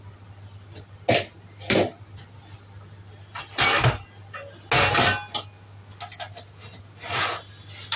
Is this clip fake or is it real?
real